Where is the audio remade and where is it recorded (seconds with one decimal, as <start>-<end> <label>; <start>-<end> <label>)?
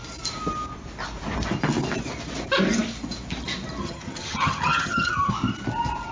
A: 0.0-3.8 recorded; 3.8-5.3 remade; 5.3-6.1 recorded